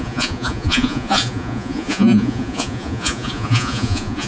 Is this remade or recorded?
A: remade